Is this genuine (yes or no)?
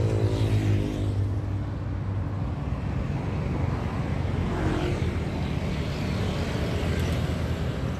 yes